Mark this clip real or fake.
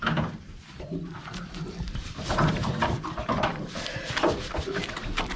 fake